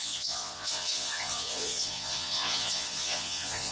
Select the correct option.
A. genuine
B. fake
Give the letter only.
B